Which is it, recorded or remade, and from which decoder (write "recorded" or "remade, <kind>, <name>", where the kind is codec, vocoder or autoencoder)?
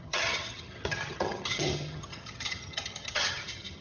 remade, vocoder, HiFi-GAN